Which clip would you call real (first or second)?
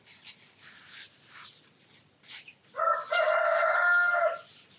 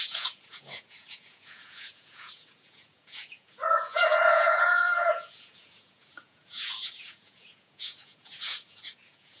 first